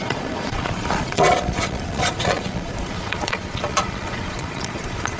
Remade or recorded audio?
remade